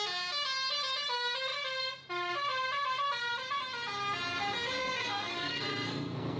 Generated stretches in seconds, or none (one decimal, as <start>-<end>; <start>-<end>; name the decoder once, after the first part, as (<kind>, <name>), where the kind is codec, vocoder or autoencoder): 4.8-6.4 (codec, SNAC)